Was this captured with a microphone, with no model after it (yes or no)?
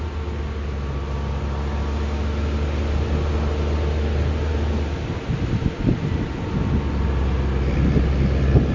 yes